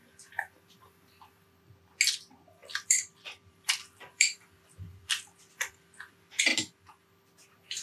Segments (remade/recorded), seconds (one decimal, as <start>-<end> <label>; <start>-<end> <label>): 0.0-2.6 recorded; 2.6-6.1 remade; 6.1-7.8 recorded